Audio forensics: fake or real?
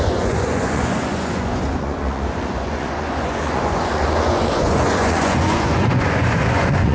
fake